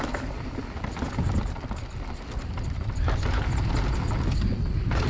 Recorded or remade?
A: recorded